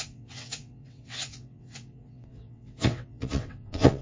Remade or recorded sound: remade